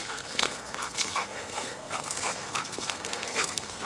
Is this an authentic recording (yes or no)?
no